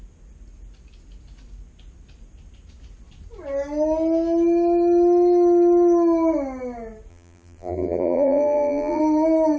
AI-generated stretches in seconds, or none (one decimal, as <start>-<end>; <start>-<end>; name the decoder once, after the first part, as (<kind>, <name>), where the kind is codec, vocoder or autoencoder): 7.1-9.0 (vocoder, BigVGAN v2)